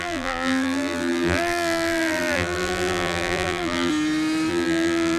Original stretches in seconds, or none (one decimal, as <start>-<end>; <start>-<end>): 3.9-4.5